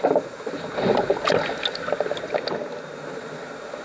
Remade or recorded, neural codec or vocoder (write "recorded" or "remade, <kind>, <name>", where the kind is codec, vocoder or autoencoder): recorded